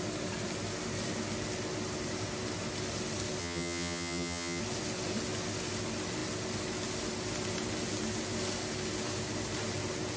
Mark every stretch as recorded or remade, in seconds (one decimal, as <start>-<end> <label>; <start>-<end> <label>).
0.0-3.4 recorded; 3.4-4.6 remade; 4.6-10.2 recorded